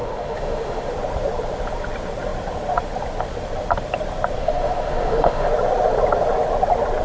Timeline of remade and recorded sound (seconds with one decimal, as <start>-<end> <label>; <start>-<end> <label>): 0.0-0.9 remade; 0.9-4.4 recorded; 4.4-5.5 remade; 5.5-7.0 recorded